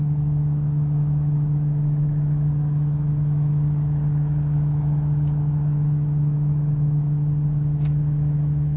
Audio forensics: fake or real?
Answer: fake